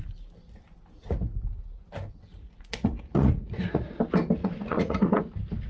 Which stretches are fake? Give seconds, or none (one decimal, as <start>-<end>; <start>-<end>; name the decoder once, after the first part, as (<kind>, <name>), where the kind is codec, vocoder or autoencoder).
1.0-1.8 (vocoder, Vocos); 2.3-4.0; 4.4-5.2